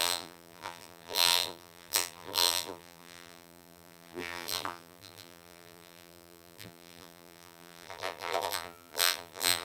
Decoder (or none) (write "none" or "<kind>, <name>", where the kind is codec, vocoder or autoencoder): vocoder, BigVGAN v2